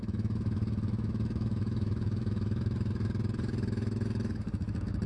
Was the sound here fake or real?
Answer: fake